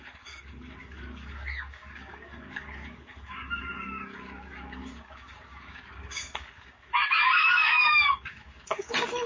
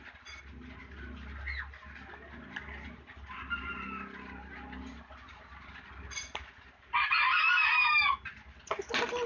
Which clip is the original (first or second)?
second